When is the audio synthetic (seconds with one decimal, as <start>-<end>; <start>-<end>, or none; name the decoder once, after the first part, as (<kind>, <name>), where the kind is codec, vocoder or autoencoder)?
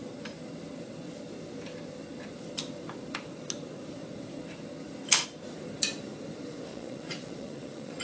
6.7-8.0 (vocoder, Vocos)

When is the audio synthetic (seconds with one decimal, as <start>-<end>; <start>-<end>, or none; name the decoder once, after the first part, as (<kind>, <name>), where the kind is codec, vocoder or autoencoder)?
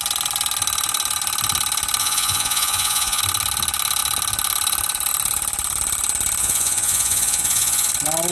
2.0-3.2 (vocoder, Vocos); 6.4-7.9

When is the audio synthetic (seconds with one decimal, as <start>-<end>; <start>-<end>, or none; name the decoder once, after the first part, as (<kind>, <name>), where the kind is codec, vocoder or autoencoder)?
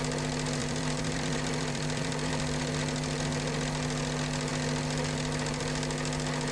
0.6-2.6 (vocoder, BigVGAN v2)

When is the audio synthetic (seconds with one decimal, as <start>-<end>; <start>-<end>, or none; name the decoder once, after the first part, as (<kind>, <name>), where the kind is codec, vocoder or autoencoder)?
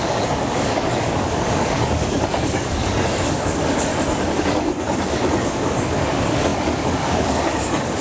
0.0-3.9 (codec, DAC); 4.4-8.0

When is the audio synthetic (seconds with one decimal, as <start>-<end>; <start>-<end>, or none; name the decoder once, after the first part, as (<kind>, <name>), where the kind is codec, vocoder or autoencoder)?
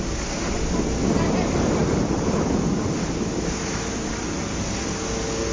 none